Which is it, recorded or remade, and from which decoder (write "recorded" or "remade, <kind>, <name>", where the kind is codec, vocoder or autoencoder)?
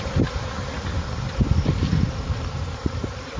recorded